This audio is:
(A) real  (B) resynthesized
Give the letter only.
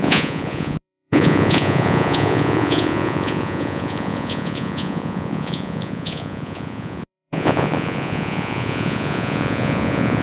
B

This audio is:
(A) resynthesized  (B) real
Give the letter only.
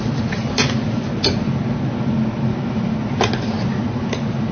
B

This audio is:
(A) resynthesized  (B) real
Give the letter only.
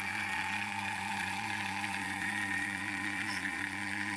A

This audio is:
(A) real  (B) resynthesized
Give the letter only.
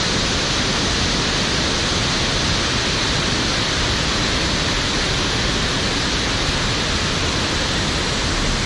A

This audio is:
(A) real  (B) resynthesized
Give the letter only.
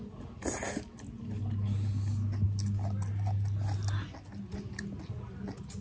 A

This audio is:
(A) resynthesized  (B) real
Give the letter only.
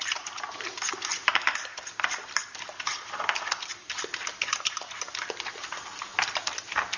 B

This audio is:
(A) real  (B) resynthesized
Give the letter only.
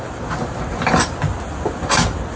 A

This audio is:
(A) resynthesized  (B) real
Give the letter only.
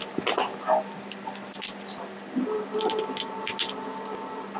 B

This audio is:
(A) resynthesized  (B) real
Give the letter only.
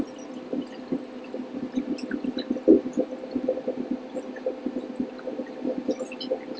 B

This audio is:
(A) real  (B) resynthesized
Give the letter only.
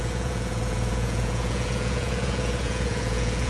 B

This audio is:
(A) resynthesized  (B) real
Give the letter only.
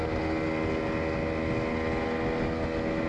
B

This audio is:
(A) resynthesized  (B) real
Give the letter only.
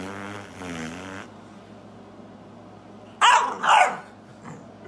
B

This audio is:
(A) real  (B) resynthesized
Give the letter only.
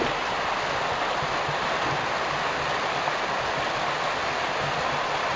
A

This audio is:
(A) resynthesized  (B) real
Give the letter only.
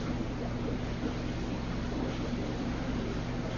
B